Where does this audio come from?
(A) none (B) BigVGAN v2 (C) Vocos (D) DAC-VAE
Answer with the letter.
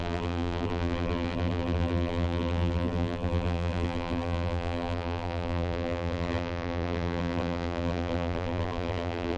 B